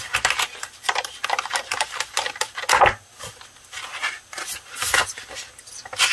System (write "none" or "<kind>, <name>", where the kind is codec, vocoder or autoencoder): none